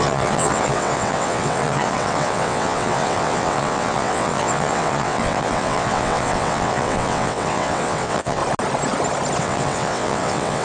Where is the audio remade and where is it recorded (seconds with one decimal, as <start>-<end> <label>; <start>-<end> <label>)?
0.0-8.4 remade; 8.4-9.4 recorded; 9.4-10.6 remade